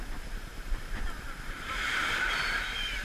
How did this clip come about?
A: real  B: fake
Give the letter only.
B